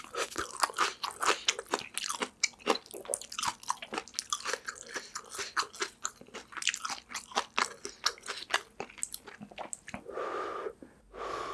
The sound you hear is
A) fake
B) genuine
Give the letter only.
B